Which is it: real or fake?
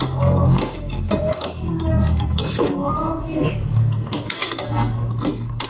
fake